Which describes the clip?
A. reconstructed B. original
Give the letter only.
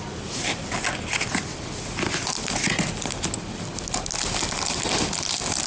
B